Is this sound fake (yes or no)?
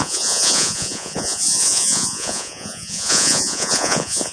yes